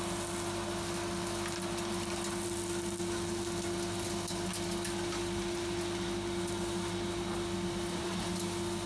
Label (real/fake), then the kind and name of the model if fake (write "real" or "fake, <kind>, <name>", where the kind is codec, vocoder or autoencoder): real